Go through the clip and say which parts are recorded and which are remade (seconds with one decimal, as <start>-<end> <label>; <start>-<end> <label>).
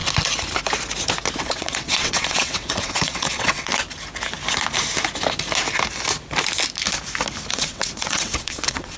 0.0-1.4 recorded; 1.4-3.7 remade; 3.7-7.5 recorded; 7.5-9.0 remade